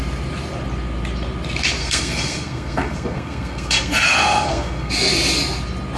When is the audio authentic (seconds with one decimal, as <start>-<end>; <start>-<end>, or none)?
0.0-1.8; 4.9-6.0